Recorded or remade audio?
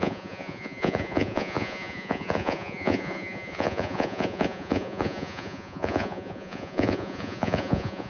remade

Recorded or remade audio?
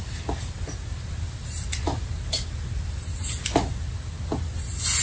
recorded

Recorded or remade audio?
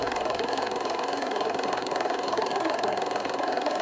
remade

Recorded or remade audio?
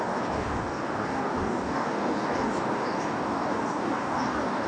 remade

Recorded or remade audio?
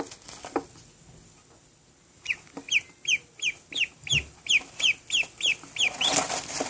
recorded